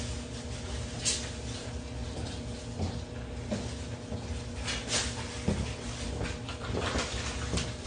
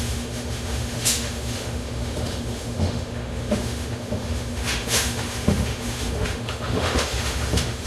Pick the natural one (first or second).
first